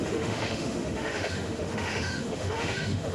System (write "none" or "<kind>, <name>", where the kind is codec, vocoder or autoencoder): autoencoder, DAC-VAE